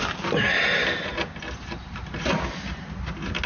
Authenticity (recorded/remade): recorded